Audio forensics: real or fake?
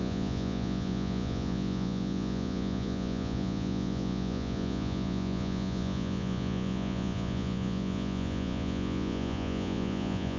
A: fake